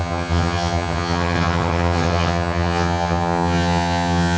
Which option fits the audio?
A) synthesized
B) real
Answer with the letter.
A